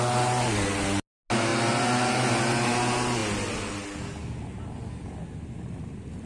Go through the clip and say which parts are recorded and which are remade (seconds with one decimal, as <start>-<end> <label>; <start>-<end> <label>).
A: 0.0-6.3 recorded